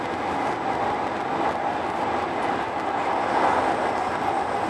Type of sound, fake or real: real